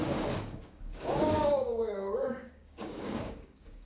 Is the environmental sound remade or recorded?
remade